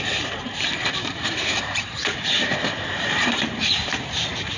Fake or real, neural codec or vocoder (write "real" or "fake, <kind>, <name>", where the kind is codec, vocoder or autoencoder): fake, vocoder, BigVGAN v2